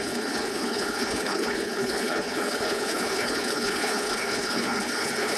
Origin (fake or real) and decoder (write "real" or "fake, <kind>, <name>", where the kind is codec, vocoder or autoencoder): fake, codec, HILCodec